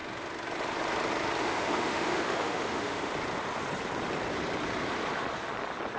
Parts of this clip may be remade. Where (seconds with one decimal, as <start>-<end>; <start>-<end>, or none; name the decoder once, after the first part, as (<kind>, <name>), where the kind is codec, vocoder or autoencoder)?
1.4-3.1 (autoencoder, DAC-VAE)